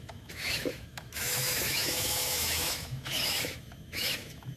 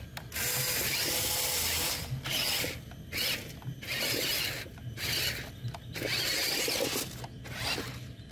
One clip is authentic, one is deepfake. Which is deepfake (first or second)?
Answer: first